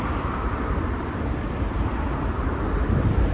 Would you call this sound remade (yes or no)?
no